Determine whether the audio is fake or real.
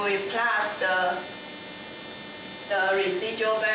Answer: real